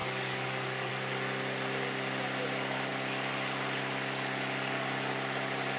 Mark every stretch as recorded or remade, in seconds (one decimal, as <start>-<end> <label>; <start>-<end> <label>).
0.0-0.9 remade; 0.9-5.8 recorded